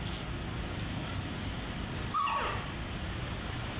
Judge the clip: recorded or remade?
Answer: recorded